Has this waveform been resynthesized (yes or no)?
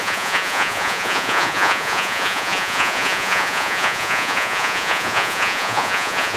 yes